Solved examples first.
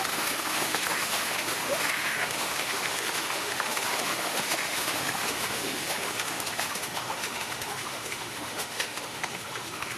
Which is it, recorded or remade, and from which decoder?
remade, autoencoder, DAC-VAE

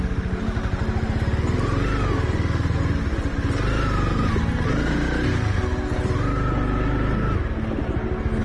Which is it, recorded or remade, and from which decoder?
recorded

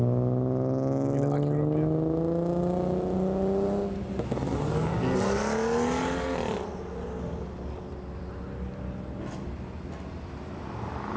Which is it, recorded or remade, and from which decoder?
recorded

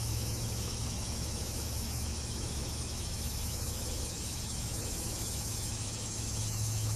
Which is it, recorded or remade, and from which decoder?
remade, autoencoder, DAC-VAE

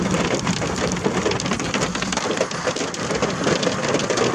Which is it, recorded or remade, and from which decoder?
recorded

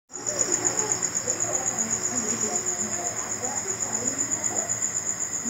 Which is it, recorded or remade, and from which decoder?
recorded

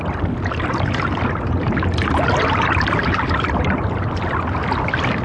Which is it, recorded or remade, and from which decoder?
recorded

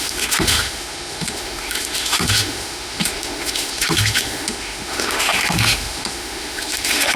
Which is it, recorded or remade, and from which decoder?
remade, autoencoder, DAC-VAE